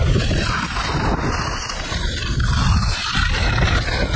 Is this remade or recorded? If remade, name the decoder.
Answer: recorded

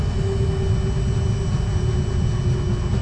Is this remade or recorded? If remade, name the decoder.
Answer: recorded